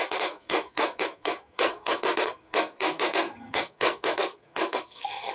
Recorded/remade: remade